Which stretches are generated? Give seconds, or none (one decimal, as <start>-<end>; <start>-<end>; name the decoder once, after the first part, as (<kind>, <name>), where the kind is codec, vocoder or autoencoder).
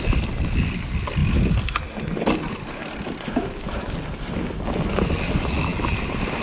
0.0-1.2 (vocoder, BigVGAN v2); 4.9-5.7